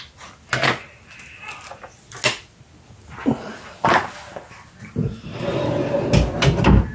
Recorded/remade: recorded